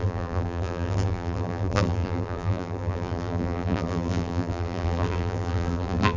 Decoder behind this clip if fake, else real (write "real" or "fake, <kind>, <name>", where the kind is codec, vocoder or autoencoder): fake, vocoder, BigVGAN v2